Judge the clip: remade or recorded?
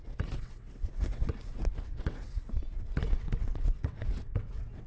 remade